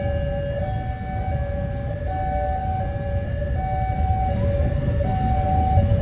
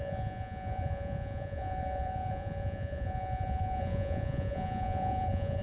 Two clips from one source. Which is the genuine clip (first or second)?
first